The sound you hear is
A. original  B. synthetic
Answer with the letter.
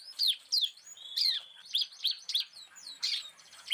B